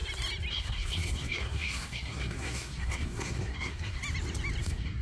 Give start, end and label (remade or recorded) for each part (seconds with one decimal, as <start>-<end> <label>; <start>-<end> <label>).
0.0-0.5 recorded; 0.5-4.0 remade; 4.0-4.6 recorded; 4.6-5.0 remade